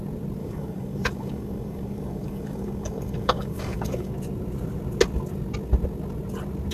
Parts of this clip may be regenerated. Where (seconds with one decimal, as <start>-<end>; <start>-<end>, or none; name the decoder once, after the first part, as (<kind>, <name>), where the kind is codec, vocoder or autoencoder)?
0.4-4.1 (codec, DAC)